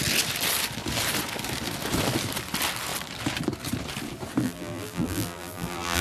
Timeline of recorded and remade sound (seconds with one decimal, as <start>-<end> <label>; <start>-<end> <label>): 0.0-4.4 recorded; 4.4-6.0 remade